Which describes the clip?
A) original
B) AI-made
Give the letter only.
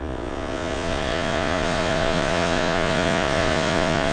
B